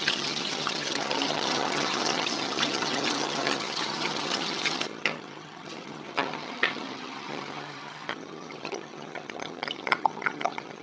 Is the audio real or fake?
fake